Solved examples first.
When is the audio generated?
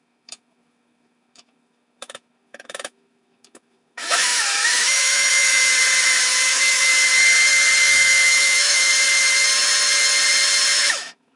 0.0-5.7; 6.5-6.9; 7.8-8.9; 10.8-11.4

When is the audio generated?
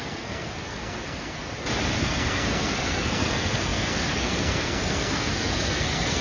0.0-1.4; 2.0-6.2